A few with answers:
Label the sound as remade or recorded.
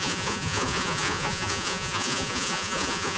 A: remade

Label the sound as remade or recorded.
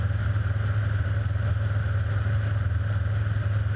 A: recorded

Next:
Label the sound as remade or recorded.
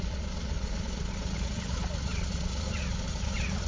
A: remade